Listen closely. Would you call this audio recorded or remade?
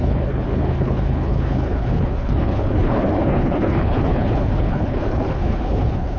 remade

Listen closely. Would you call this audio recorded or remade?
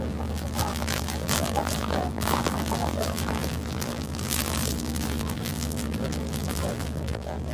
remade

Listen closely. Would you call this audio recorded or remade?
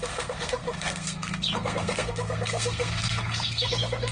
remade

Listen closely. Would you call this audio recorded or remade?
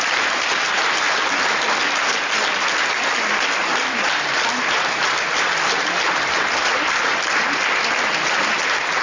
recorded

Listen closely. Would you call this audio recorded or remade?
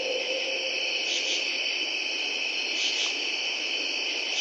recorded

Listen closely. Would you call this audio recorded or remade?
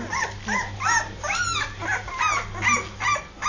recorded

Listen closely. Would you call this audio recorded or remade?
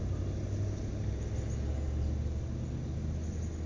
recorded